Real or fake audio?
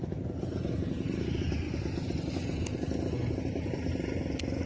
real